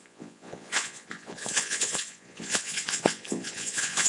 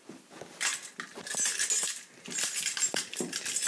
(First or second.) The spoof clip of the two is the first